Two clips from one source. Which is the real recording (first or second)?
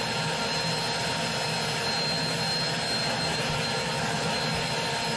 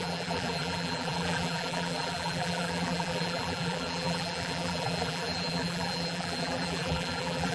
first